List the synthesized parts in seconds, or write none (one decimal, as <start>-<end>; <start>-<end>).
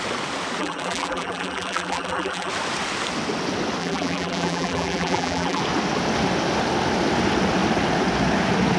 0.6-2.5; 3.8-5.6